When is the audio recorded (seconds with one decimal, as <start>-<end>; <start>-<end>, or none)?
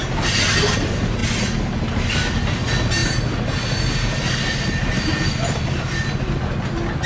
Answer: 0.0-7.1